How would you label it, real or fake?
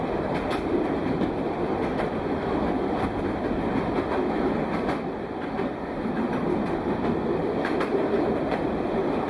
fake